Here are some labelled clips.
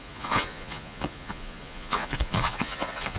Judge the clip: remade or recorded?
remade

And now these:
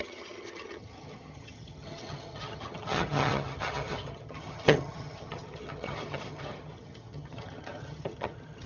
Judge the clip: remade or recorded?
remade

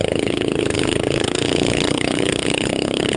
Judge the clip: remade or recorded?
remade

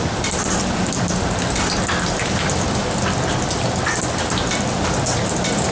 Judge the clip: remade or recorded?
recorded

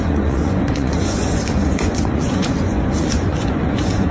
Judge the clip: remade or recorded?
remade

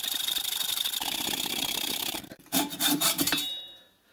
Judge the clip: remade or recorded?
remade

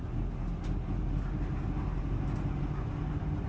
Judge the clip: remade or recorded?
recorded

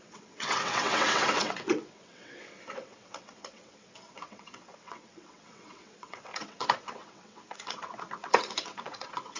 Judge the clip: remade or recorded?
remade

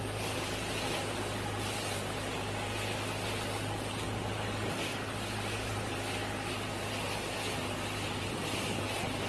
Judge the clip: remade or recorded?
recorded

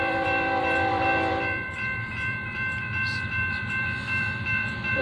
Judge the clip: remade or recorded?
remade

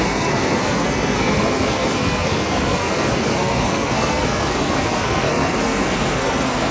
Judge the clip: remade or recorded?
remade